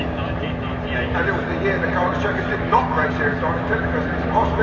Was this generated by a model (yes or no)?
yes